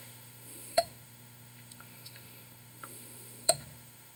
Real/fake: fake